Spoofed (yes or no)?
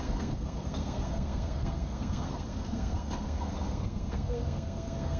yes